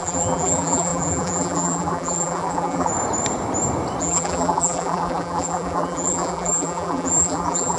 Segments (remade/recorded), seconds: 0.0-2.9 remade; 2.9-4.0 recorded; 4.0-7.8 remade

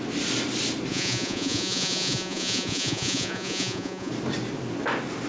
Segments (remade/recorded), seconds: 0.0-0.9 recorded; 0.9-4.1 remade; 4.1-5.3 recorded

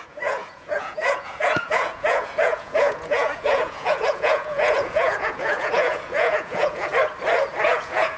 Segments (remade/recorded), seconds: 0.0-6.9 remade; 6.9-7.6 recorded; 7.6-8.2 remade

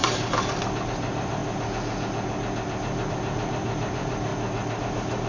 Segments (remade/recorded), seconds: 0.0-1.4 remade; 1.4-3.1 recorded; 3.1-4.3 remade; 4.3-4.8 recorded; 4.8-5.3 remade